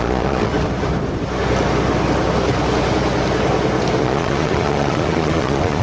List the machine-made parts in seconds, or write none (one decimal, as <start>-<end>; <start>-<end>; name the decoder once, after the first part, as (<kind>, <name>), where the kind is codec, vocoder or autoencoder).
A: 0.0-0.5 (vocoder, Vocos); 4.0-5.8

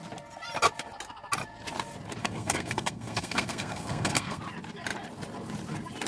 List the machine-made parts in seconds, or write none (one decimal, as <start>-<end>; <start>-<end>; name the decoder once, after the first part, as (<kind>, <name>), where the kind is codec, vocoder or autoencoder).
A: 2.2-4.4 (codec, SNAC)

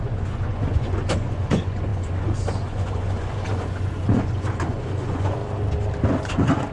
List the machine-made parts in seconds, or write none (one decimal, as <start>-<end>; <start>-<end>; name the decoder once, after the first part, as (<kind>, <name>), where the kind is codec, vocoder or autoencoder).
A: 0.0-5.4 (vocoder, Vocos); 6.3-6.7

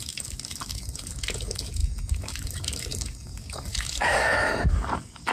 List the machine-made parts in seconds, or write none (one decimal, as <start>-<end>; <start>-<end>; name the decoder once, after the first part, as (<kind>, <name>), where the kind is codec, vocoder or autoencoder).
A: 0.0-5.3 (codec, DAC)